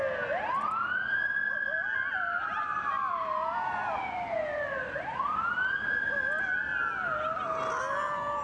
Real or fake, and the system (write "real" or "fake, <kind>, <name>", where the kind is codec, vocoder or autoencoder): real